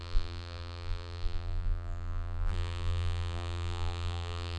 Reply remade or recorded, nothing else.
remade